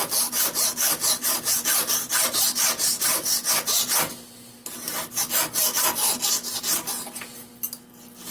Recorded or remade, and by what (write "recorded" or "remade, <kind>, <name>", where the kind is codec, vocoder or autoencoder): recorded